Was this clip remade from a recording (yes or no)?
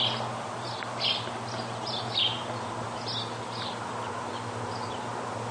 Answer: no